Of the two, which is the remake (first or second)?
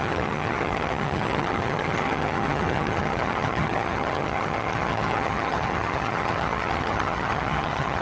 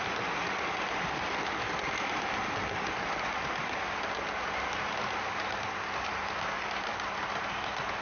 first